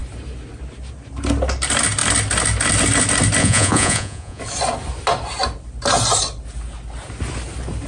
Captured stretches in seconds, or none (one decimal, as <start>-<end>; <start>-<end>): 0.0-3.4; 4.4-7.9